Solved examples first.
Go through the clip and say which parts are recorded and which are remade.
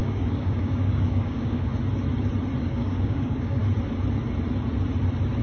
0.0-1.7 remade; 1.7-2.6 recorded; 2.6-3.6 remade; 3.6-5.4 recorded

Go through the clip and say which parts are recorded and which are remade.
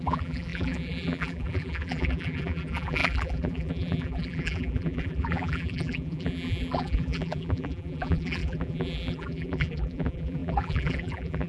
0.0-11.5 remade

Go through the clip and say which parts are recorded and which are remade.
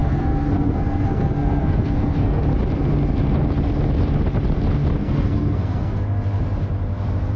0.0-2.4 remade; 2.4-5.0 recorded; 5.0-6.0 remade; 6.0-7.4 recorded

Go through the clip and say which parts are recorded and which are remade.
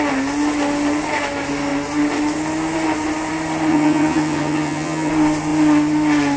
0.0-3.7 recorded; 3.7-5.1 remade; 5.1-6.4 recorded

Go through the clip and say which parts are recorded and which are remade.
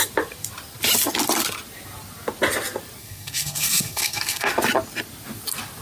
0.0-3.0 recorded; 3.0-4.5 remade; 4.5-5.8 recorded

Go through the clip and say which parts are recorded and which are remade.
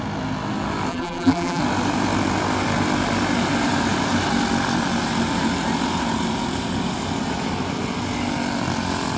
0.0-0.9 recorded; 0.9-1.6 remade; 1.6-9.2 recorded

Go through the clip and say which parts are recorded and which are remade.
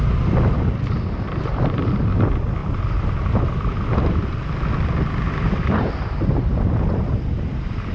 0.0-7.9 recorded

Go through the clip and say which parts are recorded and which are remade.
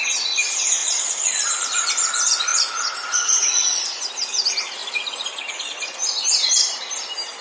0.0-0.8 recorded; 0.8-1.9 remade; 1.9-2.5 recorded; 2.5-3.8 remade; 3.8-7.4 recorded